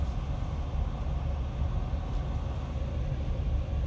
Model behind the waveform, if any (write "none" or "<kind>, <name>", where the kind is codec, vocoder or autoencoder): none